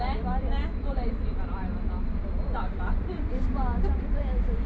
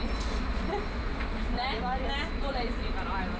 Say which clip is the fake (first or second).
first